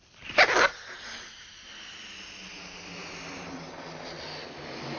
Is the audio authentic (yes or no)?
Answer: yes